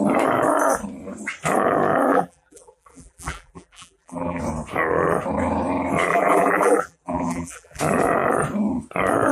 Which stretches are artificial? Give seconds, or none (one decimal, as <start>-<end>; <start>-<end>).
2.1-4.4; 6.1-7.8